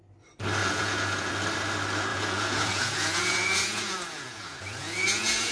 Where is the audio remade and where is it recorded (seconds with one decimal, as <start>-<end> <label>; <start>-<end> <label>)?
0.0-0.6 recorded; 0.6-1.3 remade; 1.3-2.1 recorded; 2.1-5.5 remade